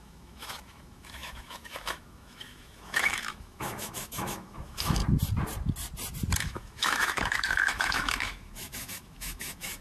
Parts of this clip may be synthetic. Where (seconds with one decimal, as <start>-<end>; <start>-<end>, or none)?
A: 0.0-5.0; 6.4-9.8